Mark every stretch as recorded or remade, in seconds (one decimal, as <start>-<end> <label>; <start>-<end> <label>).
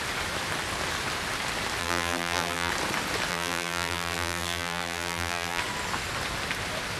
0.0-1.8 recorded; 1.8-2.7 remade; 2.7-3.3 recorded; 3.3-5.6 remade; 5.6-7.0 recorded